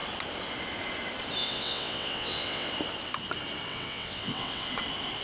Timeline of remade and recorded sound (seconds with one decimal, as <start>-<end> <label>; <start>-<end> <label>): 0.0-1.4 recorded; 1.4-2.7 remade; 2.7-3.7 recorded; 3.7-4.7 remade; 4.7-5.2 recorded